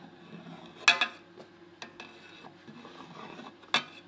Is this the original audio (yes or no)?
yes